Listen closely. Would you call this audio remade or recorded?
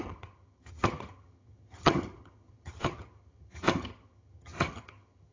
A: remade